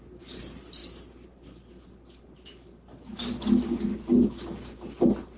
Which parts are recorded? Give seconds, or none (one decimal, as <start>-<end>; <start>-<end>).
0.0-5.4